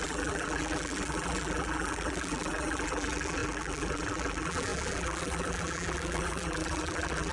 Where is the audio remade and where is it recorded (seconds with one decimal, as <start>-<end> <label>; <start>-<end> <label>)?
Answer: 0.0-7.3 remade